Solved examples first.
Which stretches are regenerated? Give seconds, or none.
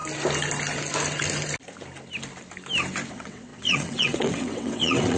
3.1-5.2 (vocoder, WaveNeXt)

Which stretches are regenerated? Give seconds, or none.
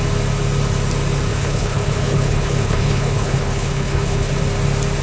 1.3-4.3 (codec, HILCodec)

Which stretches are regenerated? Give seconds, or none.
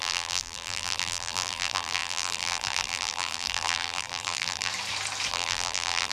0.0-4.7 (vocoder, BigVGAN v2); 5.3-6.1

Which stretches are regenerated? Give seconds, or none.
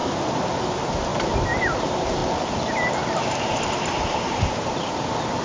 0.0-1.1 (vocoder, BigVGAN v2); 1.6-2.2; 3.2-5.4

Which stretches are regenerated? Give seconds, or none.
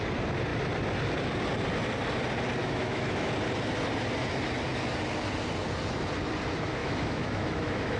2.6-3.3 (autoencoder, DAC-VAE); 6.8-8.0